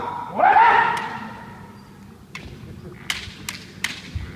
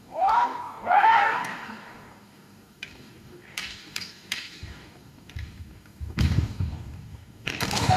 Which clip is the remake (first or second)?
second